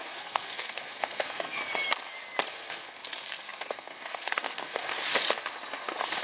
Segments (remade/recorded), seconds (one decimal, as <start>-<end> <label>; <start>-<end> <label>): 0.0-1.6 remade; 1.6-2.5 recorded; 2.5-4.9 remade; 4.9-6.2 recorded